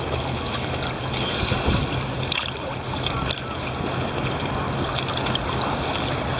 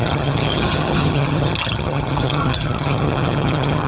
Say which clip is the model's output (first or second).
second